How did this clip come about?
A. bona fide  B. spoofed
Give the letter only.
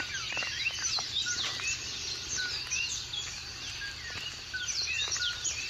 A